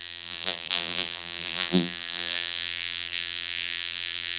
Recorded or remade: remade